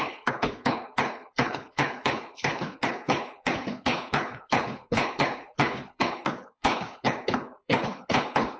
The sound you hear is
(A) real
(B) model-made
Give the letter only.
B